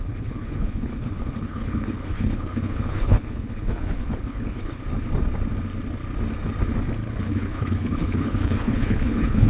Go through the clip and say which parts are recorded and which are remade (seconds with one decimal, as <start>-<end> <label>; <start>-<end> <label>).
0.0-4.8 remade; 4.8-7.1 recorded; 7.1-9.5 remade